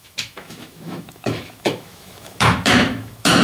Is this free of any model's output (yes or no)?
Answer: no